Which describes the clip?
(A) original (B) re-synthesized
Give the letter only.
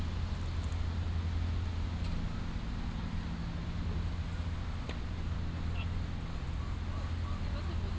A